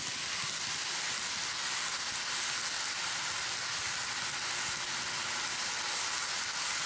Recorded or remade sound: recorded